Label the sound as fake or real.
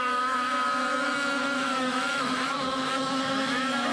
fake